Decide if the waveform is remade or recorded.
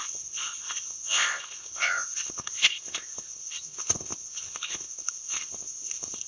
remade